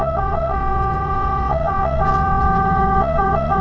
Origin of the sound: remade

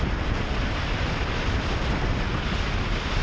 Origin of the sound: recorded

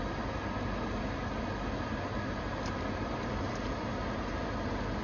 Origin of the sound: recorded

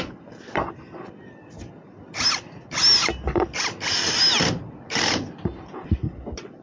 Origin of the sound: recorded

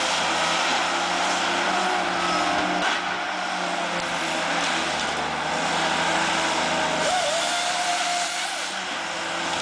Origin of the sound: recorded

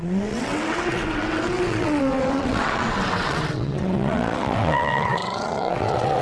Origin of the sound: remade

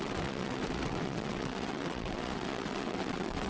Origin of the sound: remade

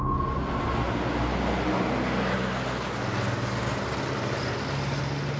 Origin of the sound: recorded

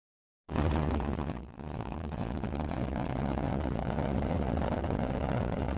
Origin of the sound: remade